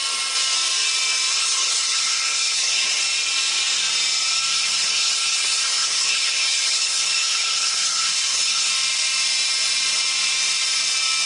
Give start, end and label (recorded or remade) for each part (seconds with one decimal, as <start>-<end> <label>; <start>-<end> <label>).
0.0-1.3 recorded; 1.3-3.0 remade; 3.0-4.5 recorded; 4.5-8.7 remade; 8.7-11.3 recorded